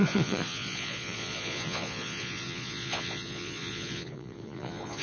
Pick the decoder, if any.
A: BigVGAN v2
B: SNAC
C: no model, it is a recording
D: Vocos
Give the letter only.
D